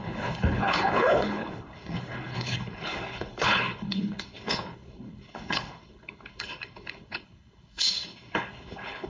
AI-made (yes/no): yes